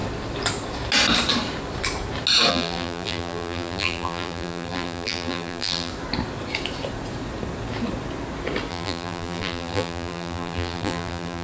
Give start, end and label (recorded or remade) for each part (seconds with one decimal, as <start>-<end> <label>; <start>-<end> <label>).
0.0-2.5 recorded; 2.5-5.9 remade; 5.9-8.7 recorded; 8.7-11.4 remade